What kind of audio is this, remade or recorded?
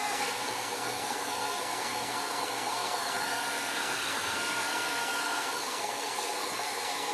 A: remade